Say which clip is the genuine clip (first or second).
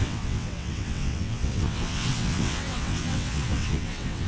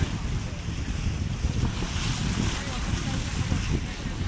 second